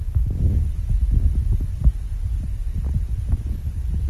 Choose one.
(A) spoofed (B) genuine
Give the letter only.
B